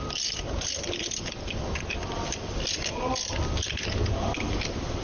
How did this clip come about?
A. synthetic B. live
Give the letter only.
B